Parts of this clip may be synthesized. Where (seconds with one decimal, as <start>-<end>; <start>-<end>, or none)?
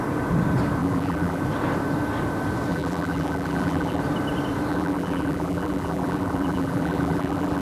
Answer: 0.8-1.4; 2.7-4.0; 4.7-7.6